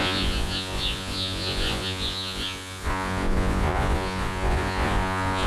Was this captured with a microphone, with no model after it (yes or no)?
no